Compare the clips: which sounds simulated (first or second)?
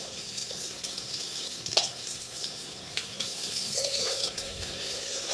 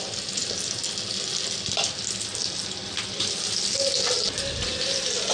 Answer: first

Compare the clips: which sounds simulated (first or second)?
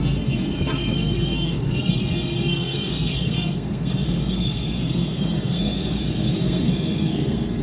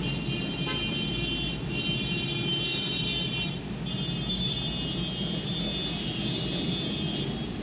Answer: first